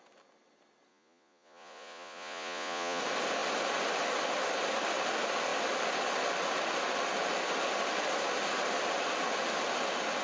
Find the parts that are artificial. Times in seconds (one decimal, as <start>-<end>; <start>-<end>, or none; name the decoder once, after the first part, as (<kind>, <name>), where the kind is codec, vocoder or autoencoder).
0.9-3.0 (vocoder, Vocos)